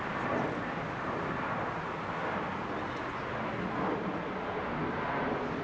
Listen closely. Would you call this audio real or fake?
real